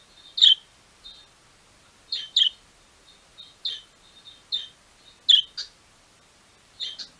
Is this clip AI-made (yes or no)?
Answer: no